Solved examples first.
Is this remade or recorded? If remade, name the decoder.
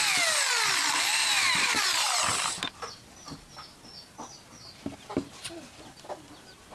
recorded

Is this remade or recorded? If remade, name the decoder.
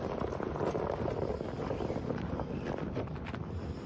recorded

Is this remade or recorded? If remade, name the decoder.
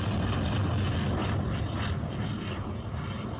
recorded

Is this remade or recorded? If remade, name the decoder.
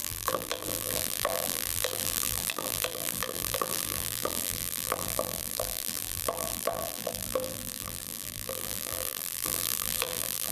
remade, vocoder, BigVGAN v2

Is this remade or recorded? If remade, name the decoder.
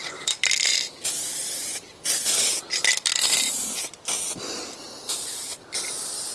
remade, vocoder, BigVGAN v2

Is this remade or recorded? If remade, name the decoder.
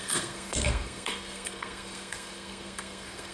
remade, codec, SNAC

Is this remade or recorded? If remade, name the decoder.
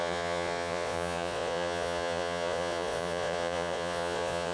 remade, vocoder, Vocos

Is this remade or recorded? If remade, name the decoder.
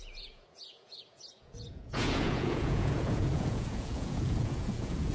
remade, vocoder, Vocos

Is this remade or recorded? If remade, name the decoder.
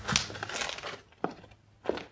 recorded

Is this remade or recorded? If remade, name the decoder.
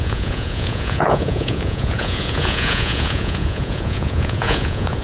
remade, vocoder, Vocos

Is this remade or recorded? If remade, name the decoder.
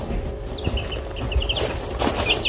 recorded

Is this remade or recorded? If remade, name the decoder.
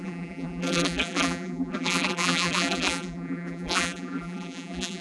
remade, vocoder, BigVGAN v2